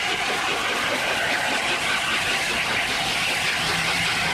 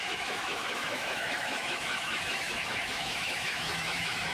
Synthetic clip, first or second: second